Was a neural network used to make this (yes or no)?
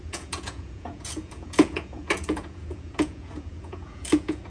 yes